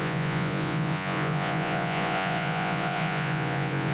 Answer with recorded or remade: remade